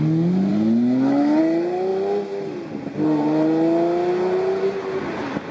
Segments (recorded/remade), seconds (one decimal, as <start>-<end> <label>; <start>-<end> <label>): 0.0-5.5 recorded